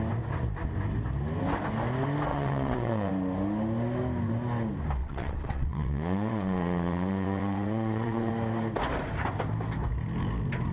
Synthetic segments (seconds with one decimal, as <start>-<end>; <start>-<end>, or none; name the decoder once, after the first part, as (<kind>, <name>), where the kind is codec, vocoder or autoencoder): 2.3-3.1 (vocoder, WaveNeXt); 5.0-8.3